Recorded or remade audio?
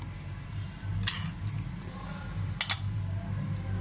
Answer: recorded